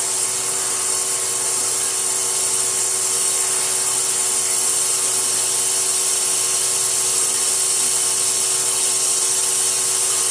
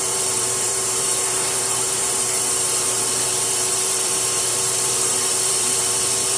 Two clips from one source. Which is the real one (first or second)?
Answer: first